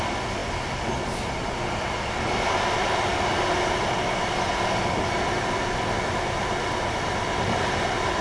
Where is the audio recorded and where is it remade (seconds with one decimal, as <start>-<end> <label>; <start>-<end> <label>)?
0.0-8.2 recorded

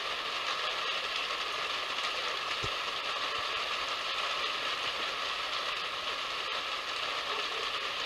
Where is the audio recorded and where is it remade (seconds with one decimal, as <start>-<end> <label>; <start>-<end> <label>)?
0.0-8.1 recorded

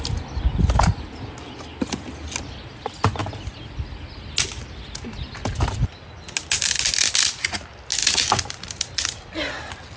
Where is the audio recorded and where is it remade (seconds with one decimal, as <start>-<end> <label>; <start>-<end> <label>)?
0.0-8.0 recorded; 8.0-8.8 remade; 8.8-10.0 recorded

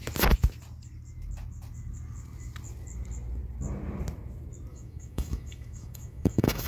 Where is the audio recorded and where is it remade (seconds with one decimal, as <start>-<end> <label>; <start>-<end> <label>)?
0.0-4.7 recorded; 4.7-6.7 remade